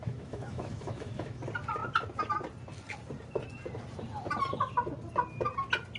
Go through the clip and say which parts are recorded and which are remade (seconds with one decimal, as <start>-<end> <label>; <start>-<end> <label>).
0.0-1.4 remade; 1.4-6.0 recorded